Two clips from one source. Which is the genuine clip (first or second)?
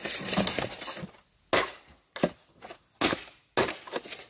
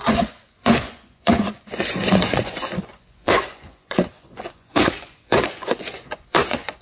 first